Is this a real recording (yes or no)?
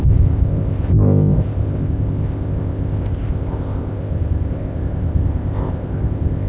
no